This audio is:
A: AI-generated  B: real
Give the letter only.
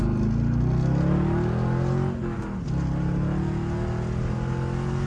B